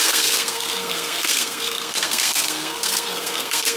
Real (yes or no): no